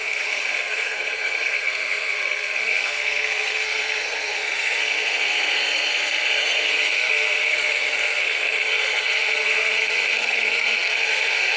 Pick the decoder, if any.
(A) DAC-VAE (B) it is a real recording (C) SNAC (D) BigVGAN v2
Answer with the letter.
C